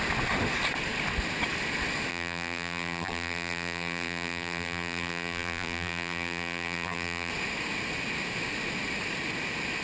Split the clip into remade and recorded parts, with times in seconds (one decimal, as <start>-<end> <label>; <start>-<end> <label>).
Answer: 0.0-2.1 recorded; 2.1-7.3 remade; 7.3-9.8 recorded